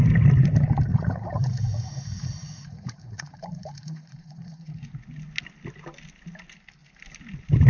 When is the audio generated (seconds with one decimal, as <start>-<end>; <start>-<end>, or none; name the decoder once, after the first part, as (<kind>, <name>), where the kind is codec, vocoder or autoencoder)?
0.9-4.9 (vocoder, Vocos)